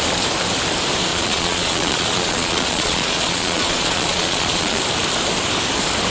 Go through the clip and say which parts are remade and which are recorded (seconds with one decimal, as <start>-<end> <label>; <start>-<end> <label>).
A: 0.0-1.1 recorded; 1.1-4.8 remade; 4.8-6.1 recorded